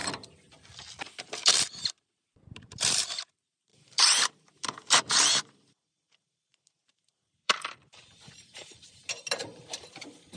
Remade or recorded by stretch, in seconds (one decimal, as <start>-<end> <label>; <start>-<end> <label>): 0.0-1.2 recorded; 1.2-10.4 remade

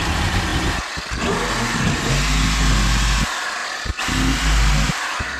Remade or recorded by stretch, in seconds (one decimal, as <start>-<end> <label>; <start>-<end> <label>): 0.0-5.4 recorded

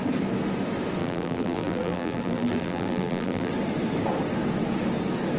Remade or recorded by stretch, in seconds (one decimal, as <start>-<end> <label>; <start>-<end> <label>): 0.0-1.0 recorded; 1.0-3.5 remade; 3.5-5.4 recorded